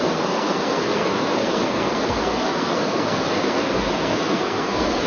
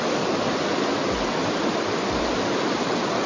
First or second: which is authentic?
second